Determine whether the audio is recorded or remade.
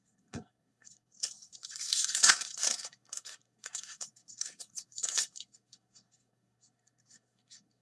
remade